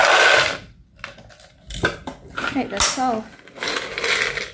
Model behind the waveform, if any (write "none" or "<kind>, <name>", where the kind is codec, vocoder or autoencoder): none